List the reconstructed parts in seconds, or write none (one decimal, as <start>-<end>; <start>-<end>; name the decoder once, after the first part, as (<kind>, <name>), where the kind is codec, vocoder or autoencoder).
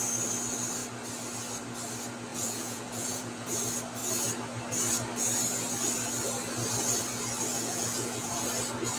2.3-3.6 (vocoder, Vocos); 7.5-8.3